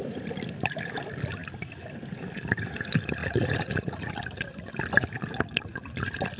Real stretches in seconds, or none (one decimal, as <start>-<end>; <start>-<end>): 0.0-3.2; 4.1-6.4